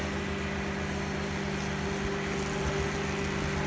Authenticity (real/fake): real